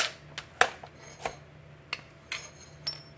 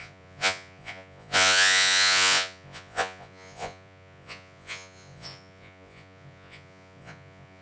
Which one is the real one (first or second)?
first